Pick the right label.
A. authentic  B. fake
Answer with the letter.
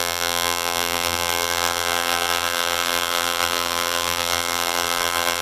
B